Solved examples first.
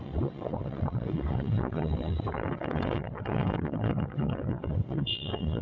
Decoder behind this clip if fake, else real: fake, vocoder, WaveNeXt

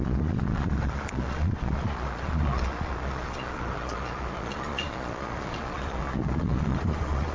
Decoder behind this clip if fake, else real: fake, vocoder, Vocos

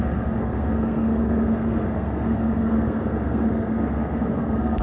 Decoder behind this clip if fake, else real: fake, codec, SNAC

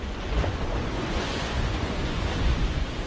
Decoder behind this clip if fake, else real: fake, vocoder, Vocos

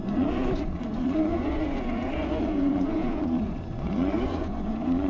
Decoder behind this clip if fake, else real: fake, vocoder, Vocos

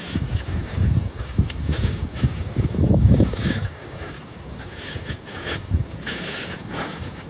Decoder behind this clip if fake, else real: fake, codec, DAC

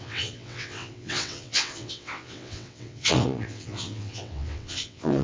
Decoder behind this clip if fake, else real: fake, vocoder, WaveNeXt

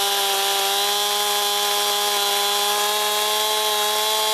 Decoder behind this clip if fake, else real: real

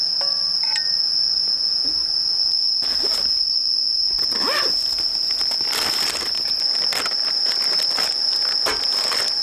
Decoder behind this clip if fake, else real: real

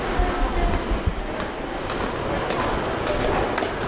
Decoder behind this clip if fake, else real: real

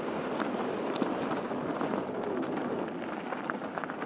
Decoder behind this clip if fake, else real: real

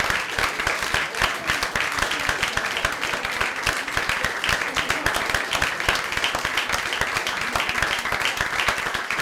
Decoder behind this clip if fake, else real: real